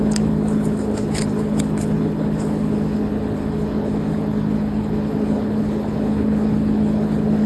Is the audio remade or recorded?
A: remade